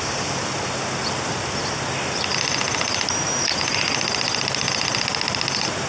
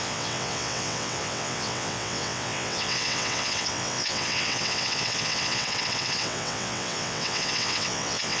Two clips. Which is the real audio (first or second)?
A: first